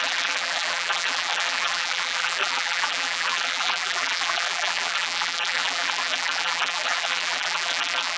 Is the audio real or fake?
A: fake